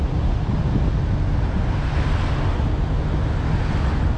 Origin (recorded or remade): recorded